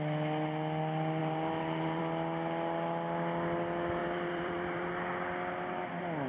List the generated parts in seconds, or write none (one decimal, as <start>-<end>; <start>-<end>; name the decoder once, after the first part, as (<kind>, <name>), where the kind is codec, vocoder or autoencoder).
1.2-2.0 (vocoder, BigVGAN v2); 4.0-4.9